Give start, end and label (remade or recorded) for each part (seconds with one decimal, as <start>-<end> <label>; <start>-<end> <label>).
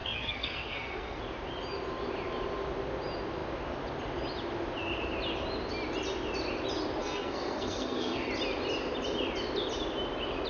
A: 0.0-1.2 remade; 1.2-7.0 recorded; 7.0-8.3 remade; 8.3-10.5 recorded